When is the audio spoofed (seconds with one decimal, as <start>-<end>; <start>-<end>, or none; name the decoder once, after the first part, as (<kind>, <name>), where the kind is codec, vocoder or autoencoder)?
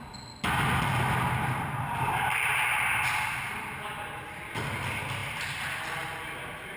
none